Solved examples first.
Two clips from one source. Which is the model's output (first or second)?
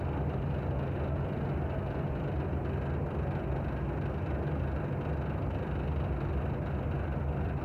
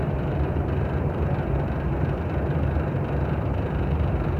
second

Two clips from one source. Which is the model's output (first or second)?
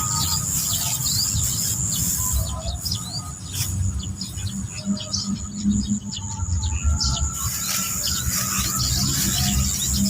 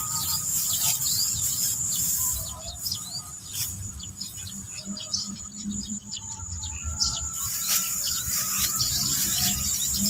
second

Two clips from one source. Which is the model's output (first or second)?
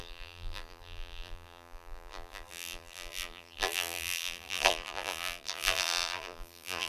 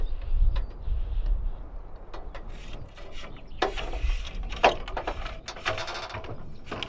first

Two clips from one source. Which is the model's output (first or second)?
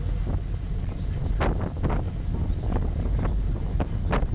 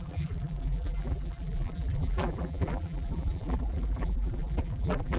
second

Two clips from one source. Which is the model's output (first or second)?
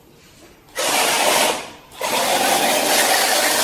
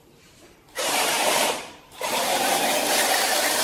second